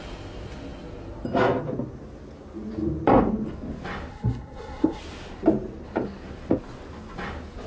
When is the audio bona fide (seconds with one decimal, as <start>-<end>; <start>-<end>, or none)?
0.0-4.1; 5.0-7.7